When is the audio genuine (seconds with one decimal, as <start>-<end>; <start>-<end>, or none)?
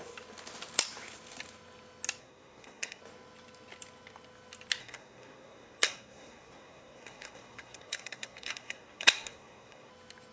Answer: 0.0-2.2; 3.0-4.8; 9.9-10.3